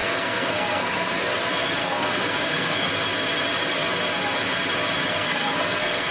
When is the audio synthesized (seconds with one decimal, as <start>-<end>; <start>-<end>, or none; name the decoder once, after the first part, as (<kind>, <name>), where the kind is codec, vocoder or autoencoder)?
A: 0.0-1.1 (codec, SNAC); 1.8-2.9; 5.1-6.1